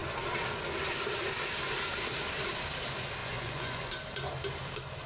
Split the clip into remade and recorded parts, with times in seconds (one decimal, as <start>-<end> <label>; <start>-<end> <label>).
0.0-3.2 recorded; 3.2-3.9 remade; 3.9-5.1 recorded